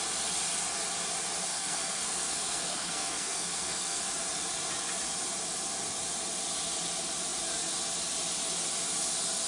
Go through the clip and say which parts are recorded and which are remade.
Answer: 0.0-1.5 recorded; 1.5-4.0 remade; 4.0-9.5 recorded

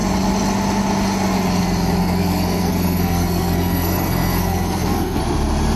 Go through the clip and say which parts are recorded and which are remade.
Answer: 0.0-2.0 recorded; 2.0-5.2 remade; 5.2-5.8 recorded